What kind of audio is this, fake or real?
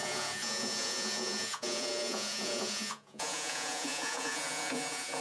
fake